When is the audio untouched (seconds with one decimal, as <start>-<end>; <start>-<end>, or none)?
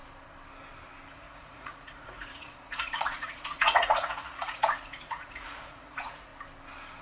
0.0-1.1; 6.3-7.0